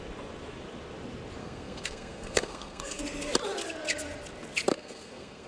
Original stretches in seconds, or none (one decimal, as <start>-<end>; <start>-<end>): 0.0-1.4; 3.0-4.7